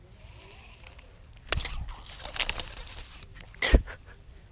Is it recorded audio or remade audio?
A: recorded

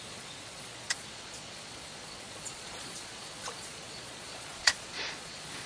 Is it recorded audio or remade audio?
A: remade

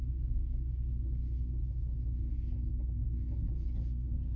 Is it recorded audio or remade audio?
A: recorded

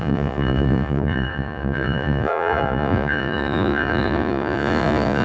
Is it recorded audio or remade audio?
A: remade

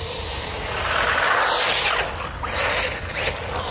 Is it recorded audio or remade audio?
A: recorded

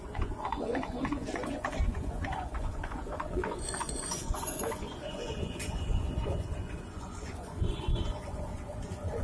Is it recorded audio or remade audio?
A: remade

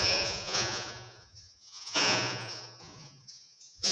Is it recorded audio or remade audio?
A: remade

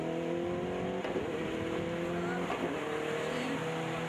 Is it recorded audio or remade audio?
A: recorded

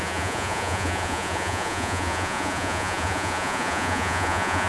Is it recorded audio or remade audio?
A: remade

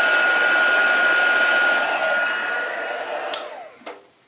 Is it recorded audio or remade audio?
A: recorded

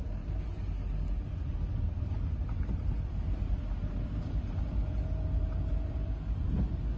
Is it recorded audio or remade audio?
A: recorded